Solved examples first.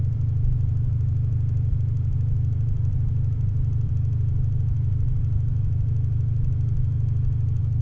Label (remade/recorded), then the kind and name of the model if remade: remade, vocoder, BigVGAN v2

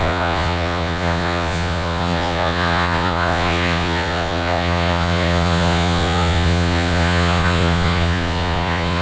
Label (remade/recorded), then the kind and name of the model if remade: remade, vocoder, Vocos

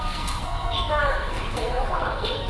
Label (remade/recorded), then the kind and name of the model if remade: remade, codec, SNAC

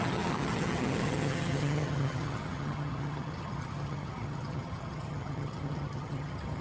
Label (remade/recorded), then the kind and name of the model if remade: remade, vocoder, HiFi-GAN